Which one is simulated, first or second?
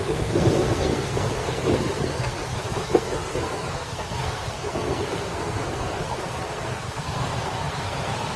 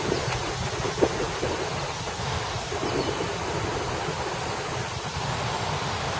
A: first